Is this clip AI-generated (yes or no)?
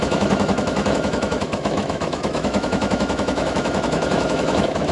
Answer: yes